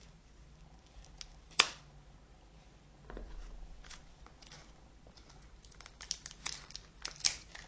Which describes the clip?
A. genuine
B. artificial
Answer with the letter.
A